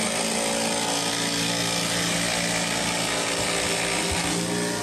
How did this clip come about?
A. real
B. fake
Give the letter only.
A